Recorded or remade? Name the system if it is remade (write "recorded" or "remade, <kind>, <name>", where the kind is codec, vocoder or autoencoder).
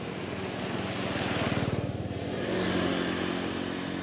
recorded